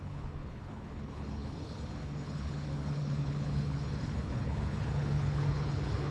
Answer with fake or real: fake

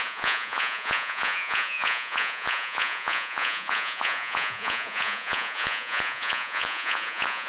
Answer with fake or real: fake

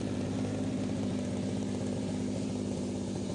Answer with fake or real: fake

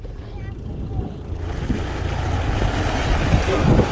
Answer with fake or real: real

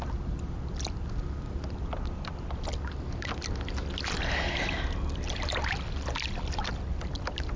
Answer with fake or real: real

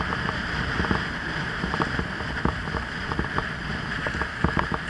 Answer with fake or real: real